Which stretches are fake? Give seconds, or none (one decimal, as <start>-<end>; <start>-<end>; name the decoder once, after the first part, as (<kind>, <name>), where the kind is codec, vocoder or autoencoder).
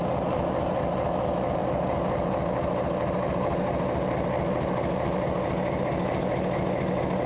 none